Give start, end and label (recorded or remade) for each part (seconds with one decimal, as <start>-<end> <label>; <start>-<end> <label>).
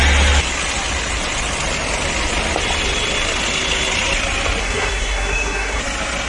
0.0-4.6 recorded; 4.6-5.8 remade; 5.8-6.3 recorded